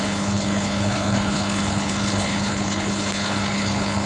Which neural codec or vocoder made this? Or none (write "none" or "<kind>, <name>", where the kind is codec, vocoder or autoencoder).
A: codec, HILCodec